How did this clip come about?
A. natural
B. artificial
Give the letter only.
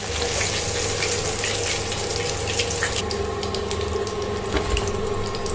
A